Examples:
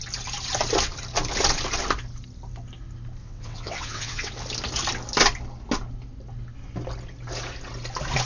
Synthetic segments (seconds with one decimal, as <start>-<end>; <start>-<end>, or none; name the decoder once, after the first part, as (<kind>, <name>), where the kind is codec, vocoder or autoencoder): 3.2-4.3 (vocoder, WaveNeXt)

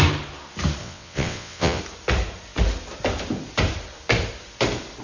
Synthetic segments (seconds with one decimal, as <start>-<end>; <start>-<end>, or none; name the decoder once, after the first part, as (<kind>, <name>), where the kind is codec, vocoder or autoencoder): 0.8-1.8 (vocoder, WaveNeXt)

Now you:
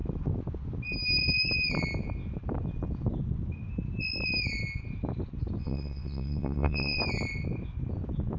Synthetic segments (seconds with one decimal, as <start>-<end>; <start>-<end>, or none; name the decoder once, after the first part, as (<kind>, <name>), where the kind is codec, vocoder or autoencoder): 5.6-7.0 (vocoder, WaveNeXt)